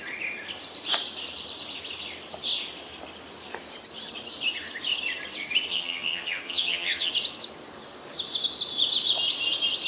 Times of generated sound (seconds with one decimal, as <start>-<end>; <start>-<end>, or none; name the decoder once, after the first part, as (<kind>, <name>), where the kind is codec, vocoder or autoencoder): 5.7-7.1 (vocoder, HiFi-GAN)

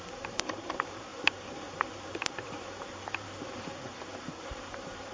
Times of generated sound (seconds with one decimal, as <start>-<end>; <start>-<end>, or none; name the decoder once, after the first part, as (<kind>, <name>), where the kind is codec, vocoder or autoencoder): 0.0-5.1 (vocoder, BigVGAN v2)